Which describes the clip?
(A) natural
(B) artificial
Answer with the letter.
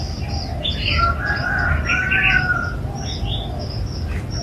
A